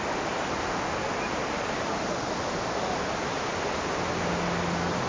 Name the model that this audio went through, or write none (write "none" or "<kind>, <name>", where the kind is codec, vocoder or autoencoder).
none